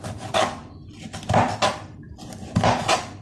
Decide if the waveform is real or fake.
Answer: real